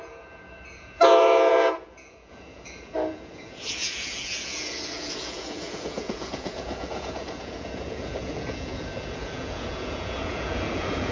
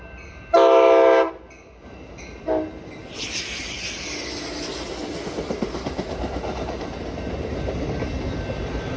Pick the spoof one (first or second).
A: first